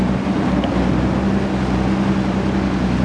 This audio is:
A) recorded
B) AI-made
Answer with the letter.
A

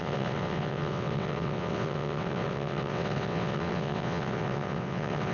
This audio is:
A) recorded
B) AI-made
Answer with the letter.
B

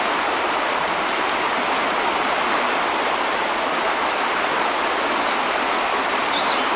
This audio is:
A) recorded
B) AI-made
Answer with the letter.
A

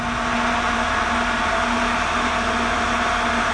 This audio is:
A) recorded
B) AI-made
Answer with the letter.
A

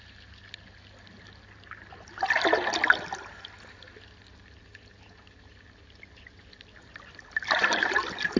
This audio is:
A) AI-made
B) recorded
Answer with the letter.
B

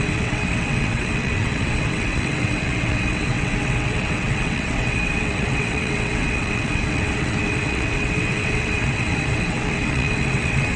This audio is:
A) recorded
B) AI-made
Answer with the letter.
B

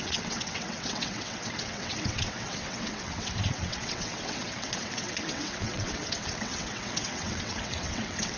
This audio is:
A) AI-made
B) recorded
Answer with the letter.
A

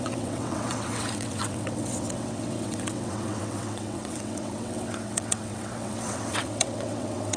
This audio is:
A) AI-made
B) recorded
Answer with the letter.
A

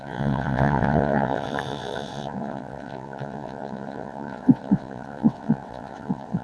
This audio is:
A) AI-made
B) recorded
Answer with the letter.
A